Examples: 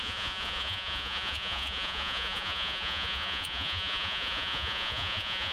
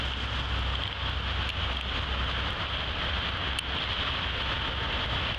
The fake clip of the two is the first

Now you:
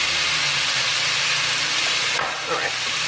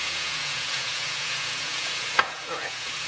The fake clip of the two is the second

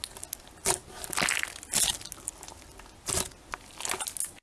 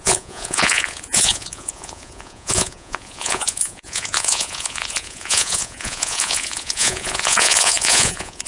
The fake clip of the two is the second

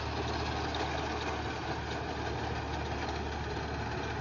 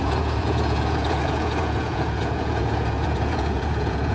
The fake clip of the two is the second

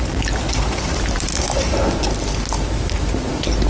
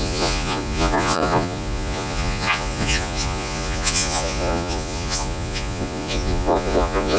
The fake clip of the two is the second